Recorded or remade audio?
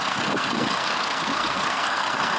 remade